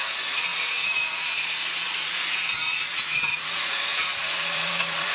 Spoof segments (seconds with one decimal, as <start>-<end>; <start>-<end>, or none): 0.0-5.1